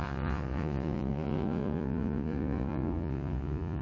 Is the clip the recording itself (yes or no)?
no